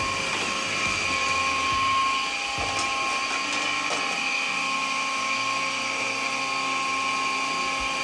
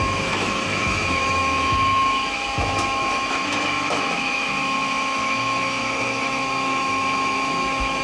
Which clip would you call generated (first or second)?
second